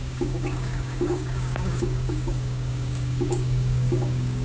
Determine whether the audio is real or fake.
fake